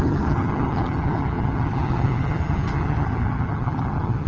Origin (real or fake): fake